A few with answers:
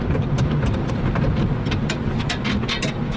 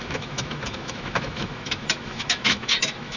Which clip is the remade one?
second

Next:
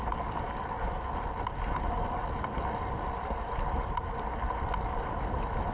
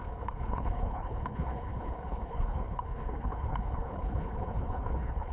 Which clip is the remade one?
second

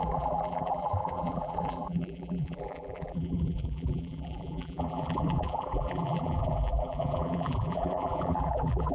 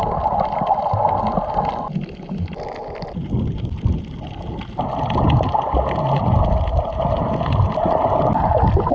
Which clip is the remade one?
first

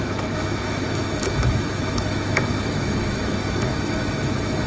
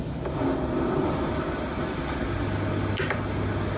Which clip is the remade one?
first